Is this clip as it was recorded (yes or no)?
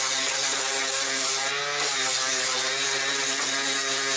yes